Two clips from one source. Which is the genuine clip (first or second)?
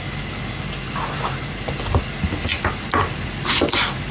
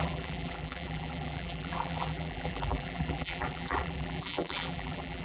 first